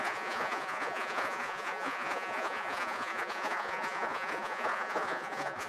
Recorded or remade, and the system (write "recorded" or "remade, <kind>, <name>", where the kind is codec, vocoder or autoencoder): remade, vocoder, Vocos